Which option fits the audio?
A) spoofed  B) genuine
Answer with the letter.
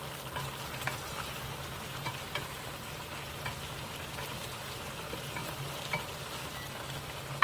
B